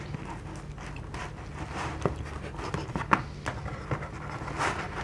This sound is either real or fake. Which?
real